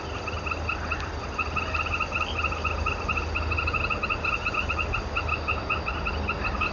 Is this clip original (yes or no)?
yes